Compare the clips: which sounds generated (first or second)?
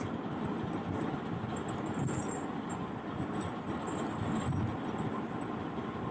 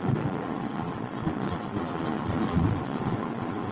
second